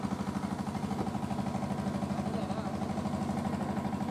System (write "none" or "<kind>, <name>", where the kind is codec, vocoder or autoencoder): none